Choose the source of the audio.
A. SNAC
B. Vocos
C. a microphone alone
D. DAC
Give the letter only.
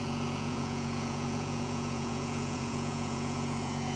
B